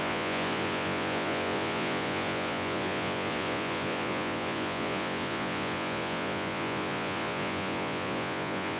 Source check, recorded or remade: remade